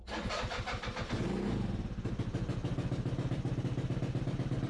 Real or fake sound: real